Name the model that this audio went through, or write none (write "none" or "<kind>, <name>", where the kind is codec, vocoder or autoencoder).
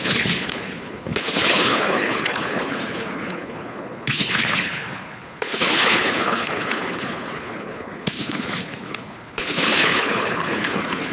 codec, HILCodec